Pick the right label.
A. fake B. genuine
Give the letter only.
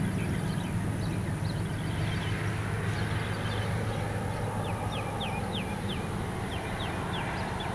B